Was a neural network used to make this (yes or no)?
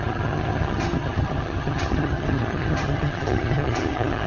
yes